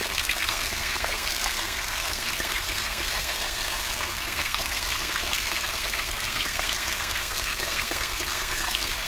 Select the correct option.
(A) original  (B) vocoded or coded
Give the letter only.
B